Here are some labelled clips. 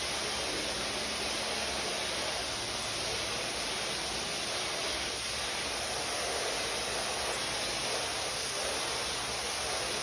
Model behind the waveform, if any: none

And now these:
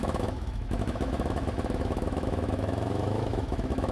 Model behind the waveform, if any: autoencoder, DAC-VAE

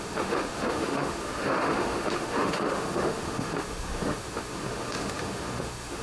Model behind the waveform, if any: autoencoder, DAC-VAE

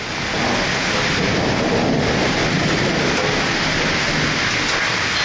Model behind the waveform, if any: none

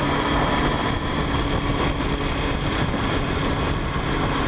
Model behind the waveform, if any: none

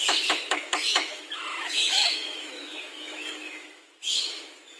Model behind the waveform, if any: autoencoder, DAC-VAE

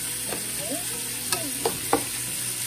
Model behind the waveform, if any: none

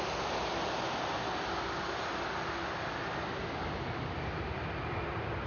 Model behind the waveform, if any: none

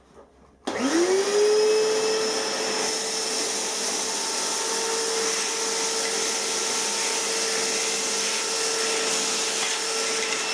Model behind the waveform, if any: none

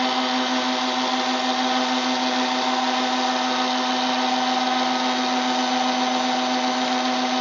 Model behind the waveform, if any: none